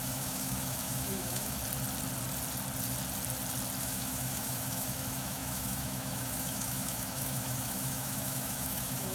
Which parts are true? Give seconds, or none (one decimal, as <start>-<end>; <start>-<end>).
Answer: 1.6-3.8